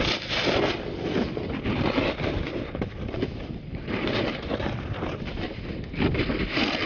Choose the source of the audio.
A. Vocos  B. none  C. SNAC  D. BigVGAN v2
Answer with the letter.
B